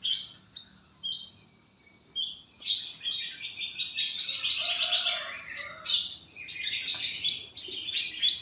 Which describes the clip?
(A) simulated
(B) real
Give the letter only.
B